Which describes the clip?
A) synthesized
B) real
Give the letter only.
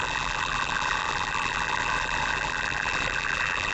A